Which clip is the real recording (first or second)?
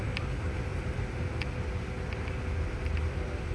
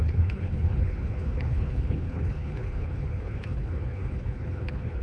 first